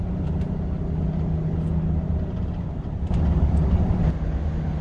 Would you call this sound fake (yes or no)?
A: no